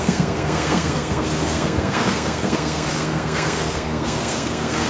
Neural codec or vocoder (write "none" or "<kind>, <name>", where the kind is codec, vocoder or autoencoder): codec, SNAC